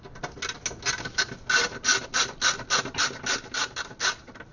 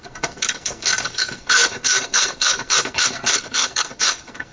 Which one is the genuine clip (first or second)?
first